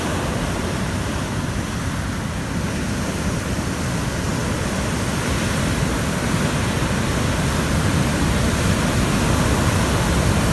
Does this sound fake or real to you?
real